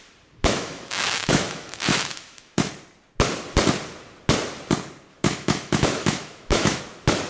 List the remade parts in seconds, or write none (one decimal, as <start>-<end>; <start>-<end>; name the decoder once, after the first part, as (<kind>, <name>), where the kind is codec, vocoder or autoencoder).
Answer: 0.4-2.7 (autoencoder, DAC-VAE); 5.1-6.8